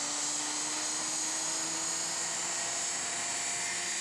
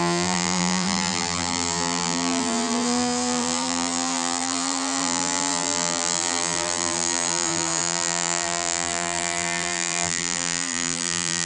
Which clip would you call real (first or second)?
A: first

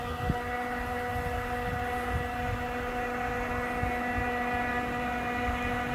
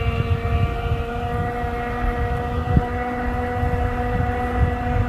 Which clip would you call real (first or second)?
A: first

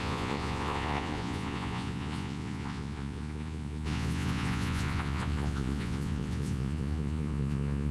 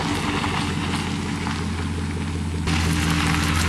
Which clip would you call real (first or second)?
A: second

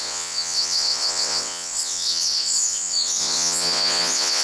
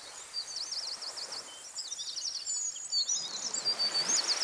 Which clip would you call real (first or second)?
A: second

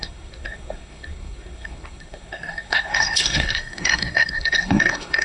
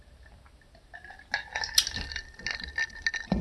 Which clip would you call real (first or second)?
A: second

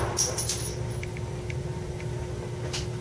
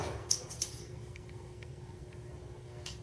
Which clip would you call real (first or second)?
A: first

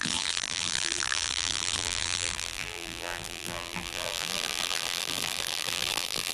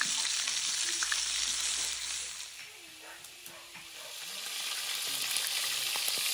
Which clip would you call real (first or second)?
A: second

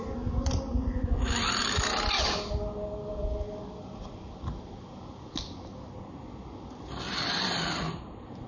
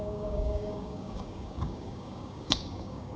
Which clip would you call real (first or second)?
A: first